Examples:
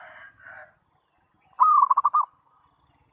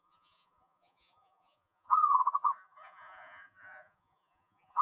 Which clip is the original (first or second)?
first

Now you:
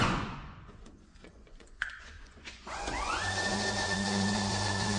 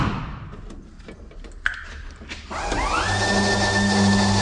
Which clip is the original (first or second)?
second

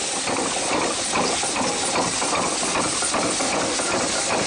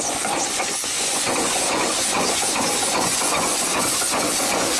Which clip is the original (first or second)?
first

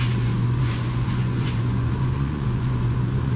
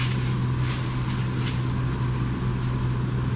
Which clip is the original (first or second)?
second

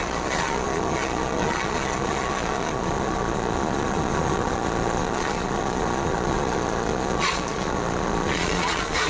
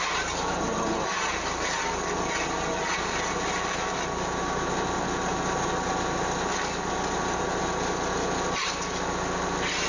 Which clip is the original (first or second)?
second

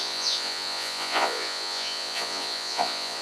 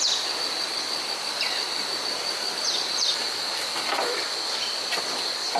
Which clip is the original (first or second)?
second